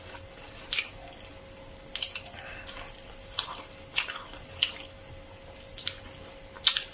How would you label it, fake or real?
real